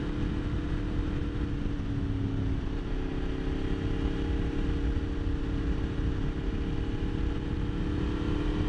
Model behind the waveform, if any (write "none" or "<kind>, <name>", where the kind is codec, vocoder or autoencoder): none